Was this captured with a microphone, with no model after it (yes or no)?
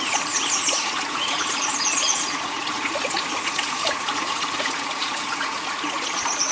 no